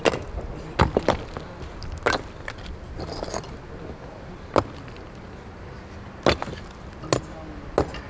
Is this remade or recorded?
recorded